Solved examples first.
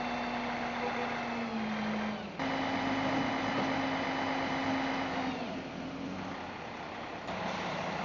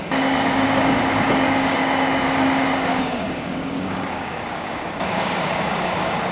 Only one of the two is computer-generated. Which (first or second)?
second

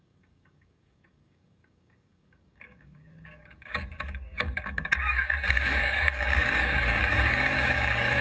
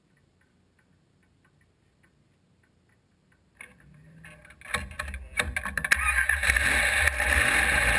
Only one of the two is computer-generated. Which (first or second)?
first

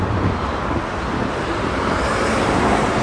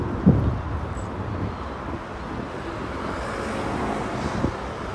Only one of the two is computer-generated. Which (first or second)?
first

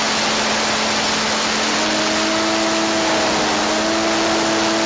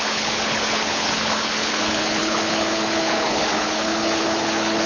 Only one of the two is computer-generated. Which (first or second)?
second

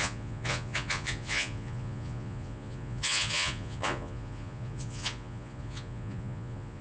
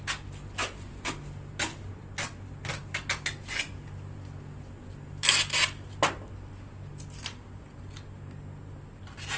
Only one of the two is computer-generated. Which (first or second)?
first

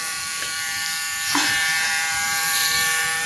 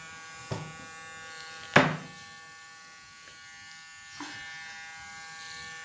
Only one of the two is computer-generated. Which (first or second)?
first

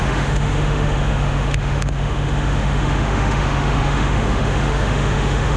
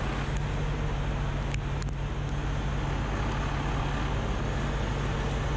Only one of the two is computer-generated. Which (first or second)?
first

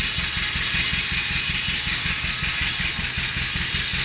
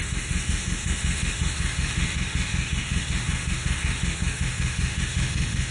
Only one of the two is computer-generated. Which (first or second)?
second